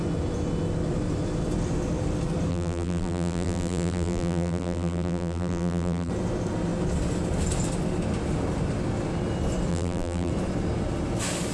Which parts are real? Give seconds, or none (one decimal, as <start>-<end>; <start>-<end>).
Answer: 0.0-2.5; 6.1-9.7; 10.3-11.5